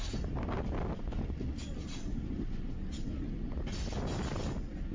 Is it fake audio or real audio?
real